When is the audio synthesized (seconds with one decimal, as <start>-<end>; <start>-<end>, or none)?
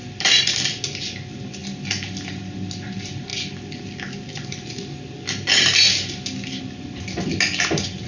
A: none